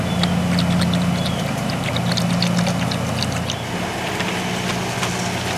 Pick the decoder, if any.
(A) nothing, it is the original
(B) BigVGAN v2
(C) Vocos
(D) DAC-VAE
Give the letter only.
A